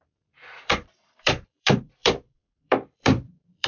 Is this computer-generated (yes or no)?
yes